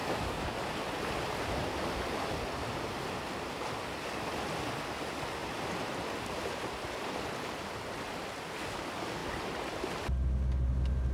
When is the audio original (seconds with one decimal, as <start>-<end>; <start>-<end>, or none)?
0.6-11.1